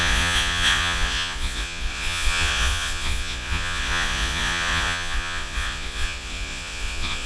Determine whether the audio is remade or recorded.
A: remade